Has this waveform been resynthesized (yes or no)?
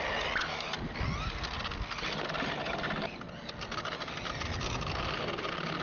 no